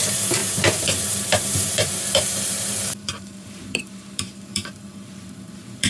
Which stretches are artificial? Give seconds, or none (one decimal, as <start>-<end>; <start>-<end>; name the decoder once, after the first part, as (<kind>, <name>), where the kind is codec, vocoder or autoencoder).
0.0-5.9 (vocoder, BigVGAN v2)